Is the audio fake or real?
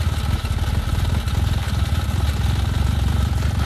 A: real